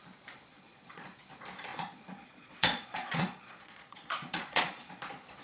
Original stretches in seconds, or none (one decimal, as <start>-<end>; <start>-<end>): 0.0-0.5; 1.2-1.7; 4.9-5.4

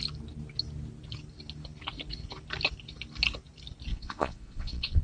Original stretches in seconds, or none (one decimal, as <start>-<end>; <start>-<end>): 0.0-3.9

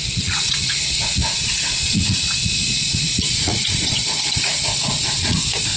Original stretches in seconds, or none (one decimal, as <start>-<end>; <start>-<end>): none

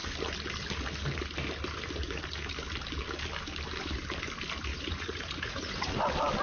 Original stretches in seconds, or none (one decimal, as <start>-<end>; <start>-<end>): 0.0-4.7; 5.9-6.4

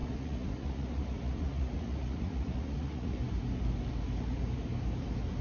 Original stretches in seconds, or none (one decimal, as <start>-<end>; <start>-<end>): 3.2-5.4

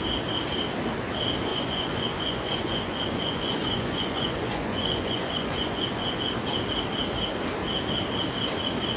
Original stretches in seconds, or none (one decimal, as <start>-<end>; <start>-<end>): 0.0-1.5; 6.2-9.0

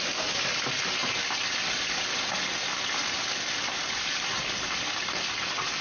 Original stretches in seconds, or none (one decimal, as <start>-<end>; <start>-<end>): 0.0-5.8